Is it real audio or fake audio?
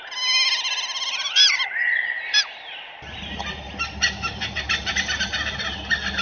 real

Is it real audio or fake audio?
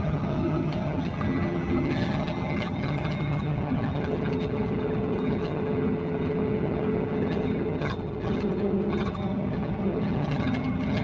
fake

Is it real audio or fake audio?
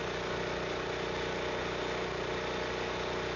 real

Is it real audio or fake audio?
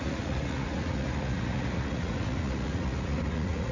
fake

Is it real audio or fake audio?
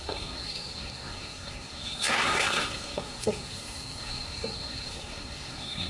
fake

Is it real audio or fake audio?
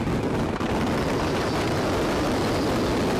real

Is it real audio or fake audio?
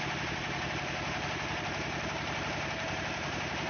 fake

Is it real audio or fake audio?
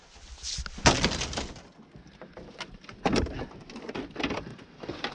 real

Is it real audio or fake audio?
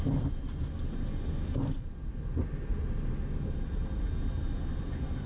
real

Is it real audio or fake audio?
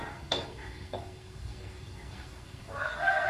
fake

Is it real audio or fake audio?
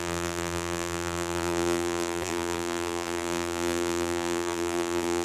fake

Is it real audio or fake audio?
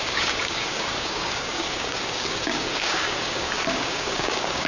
fake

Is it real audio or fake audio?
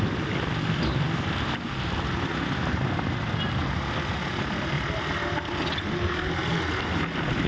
real